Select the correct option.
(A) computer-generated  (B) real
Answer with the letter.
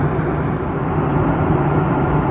B